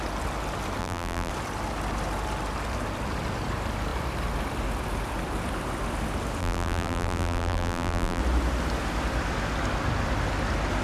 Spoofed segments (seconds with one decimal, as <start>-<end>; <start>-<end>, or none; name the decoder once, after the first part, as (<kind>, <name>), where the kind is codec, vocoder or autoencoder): 0.8-1.3 (vocoder, BigVGAN v2); 6.4-8.2